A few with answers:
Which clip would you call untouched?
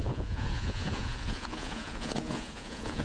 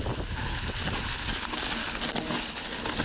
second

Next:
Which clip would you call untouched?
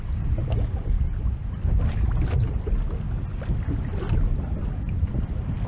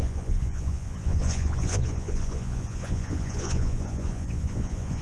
first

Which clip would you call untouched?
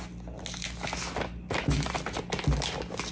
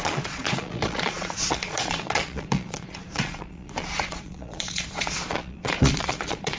first